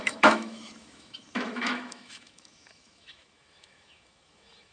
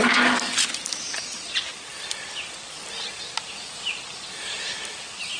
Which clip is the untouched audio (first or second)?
second